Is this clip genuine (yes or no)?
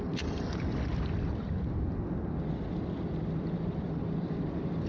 yes